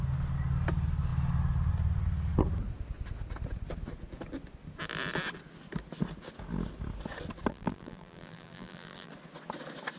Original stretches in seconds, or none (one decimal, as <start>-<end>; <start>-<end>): 0.0-7.5; 9.1-10.0